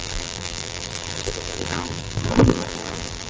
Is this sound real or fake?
fake